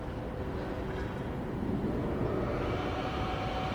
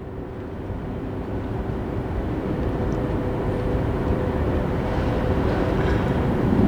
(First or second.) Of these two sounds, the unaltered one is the first